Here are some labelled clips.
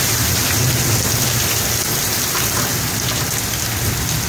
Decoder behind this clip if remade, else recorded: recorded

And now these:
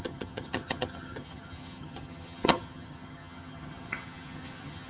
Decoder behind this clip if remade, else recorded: remade, vocoder, HiFi-GAN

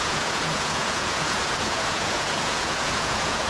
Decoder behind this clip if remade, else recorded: remade, vocoder, Vocos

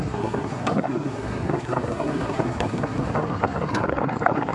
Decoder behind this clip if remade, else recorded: remade, codec, SNAC